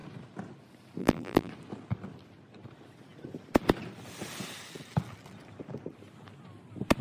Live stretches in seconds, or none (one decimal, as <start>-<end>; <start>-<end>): 0.0-1.0; 1.5-7.0